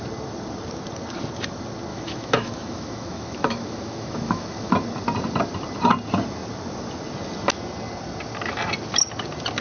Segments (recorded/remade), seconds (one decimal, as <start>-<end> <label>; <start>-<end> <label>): 0.0-1.9 recorded; 1.9-4.7 remade; 4.7-9.6 recorded